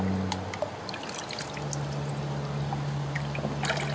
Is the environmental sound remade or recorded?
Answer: recorded